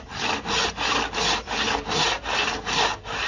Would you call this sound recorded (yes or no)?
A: yes